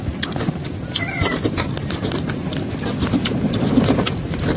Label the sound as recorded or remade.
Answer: recorded